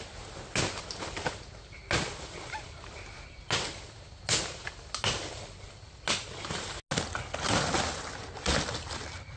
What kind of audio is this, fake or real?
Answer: real